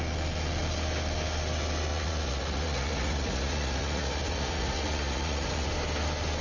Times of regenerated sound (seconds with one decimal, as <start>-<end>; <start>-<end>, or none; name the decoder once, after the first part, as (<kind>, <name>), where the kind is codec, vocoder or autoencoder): 1.9-5.7 (vocoder, Vocos)

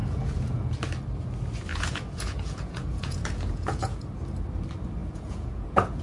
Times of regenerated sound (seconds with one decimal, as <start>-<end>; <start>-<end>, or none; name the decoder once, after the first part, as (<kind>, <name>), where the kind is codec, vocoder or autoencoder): 0.0-0.7 (vocoder, Vocos); 1.7-4.1; 5.0-6.0

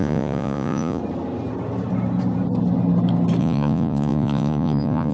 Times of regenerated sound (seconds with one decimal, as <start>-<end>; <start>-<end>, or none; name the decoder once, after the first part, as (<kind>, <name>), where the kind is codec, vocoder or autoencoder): 0.0-1.0 (vocoder, Vocos); 3.4-5.1

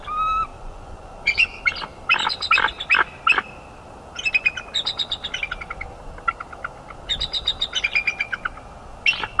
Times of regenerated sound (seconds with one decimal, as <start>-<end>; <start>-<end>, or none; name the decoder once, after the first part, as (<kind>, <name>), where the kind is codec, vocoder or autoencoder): 0.5-1.6 (vocoder, Vocos)

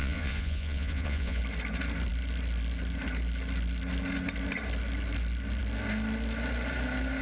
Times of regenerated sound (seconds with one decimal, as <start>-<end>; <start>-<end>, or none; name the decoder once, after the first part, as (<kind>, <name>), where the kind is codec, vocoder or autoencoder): 0.0-1.4 (vocoder, Vocos)